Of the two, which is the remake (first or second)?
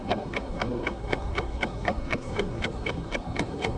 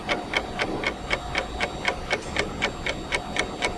first